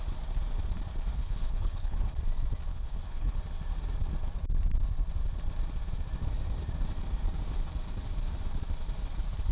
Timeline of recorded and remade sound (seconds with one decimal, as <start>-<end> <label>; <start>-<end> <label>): 0.0-1.1 recorded; 1.1-2.1 remade; 2.1-2.7 recorded; 2.7-3.4 remade; 3.4-9.5 recorded